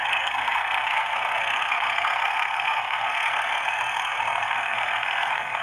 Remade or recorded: remade